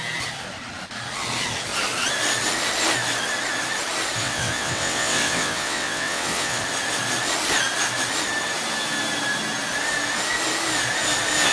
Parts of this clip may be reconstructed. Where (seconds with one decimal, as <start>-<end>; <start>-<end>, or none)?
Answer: 4.2-6.6

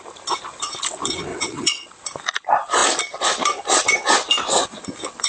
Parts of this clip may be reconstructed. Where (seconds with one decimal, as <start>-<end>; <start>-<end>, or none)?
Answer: 1.3-1.9